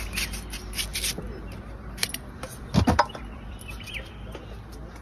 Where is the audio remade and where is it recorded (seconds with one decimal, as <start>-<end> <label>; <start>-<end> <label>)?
0.0-0.9 recorded; 0.9-3.9 remade; 3.9-5.0 recorded